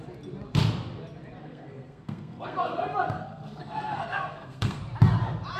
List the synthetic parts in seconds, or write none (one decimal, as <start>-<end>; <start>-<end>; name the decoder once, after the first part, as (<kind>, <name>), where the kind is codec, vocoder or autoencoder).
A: 1.4-4.8 (codec, SNAC)